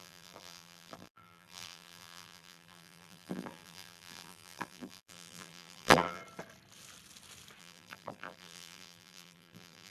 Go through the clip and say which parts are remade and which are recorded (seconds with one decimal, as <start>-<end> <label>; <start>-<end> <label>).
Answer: 0.0-6.2 remade; 6.2-7.6 recorded; 7.6-9.9 remade